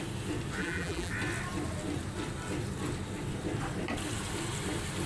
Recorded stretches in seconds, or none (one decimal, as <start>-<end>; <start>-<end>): 0.0-0.6; 1.1-5.1